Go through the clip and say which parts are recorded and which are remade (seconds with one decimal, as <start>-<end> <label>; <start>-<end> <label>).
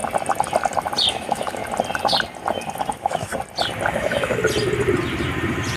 0.0-1.1 recorded; 1.1-1.6 remade; 1.6-2.9 recorded; 2.9-3.3 remade; 3.3-3.9 recorded; 3.9-4.4 remade; 4.4-5.8 recorded